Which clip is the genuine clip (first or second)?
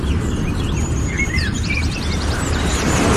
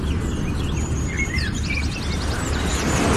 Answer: second